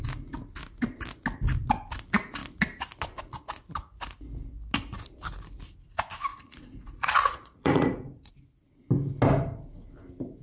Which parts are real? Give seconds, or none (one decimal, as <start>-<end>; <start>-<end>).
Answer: 0.0-6.3; 8.3-10.4

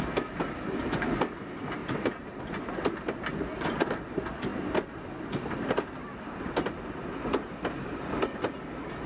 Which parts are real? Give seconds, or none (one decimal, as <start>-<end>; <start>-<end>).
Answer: 0.0-9.1